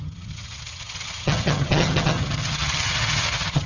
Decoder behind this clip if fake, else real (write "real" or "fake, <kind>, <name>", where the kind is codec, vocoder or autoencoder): fake, vocoder, HiFi-GAN